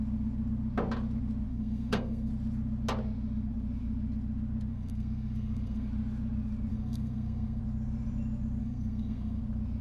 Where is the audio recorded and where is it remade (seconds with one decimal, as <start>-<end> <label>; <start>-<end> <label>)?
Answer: 0.0-1.5 recorded; 1.5-2.3 remade; 2.3-4.7 recorded; 4.7-5.9 remade; 5.9-6.7 recorded; 6.7-7.6 remade; 7.6-8.6 recorded; 8.6-9.4 remade; 9.4-9.8 recorded